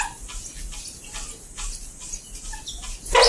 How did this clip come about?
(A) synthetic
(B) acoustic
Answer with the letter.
B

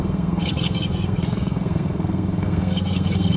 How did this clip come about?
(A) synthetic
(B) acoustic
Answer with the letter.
A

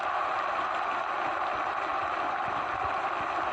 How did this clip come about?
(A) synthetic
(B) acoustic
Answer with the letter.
B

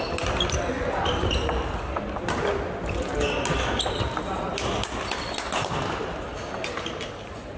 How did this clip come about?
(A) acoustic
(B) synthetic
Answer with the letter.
A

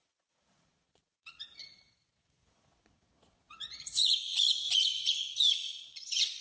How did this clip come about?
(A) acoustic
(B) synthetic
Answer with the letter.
B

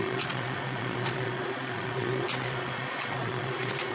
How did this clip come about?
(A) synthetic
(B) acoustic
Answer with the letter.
A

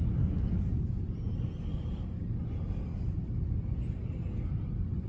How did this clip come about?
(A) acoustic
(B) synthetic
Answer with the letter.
A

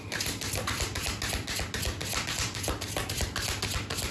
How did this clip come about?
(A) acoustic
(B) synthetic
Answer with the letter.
A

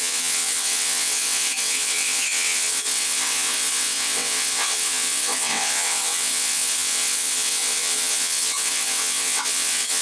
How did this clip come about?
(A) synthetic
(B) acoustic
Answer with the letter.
A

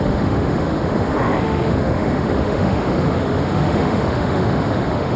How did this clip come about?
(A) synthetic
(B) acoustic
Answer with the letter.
A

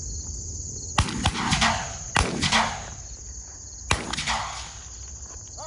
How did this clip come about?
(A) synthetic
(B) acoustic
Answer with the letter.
B